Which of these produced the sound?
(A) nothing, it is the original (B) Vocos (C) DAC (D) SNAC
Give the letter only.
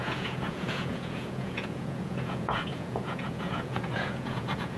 B